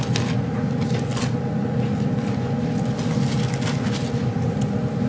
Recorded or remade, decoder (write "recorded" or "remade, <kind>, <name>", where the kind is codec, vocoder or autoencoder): recorded